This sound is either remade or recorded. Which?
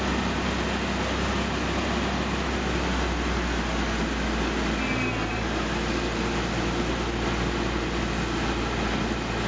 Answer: recorded